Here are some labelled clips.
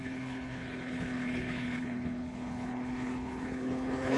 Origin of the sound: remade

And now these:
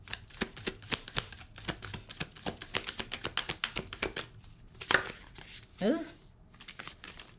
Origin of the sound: recorded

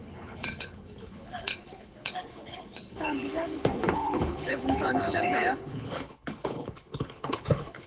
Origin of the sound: remade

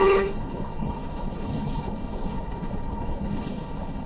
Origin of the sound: remade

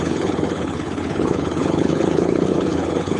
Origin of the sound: remade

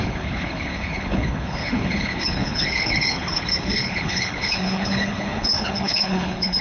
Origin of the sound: remade